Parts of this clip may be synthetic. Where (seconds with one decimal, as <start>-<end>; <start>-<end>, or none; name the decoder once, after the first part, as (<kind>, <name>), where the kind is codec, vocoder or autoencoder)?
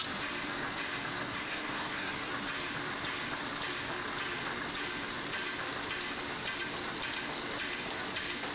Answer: 1.4-2.3 (codec, SNAC)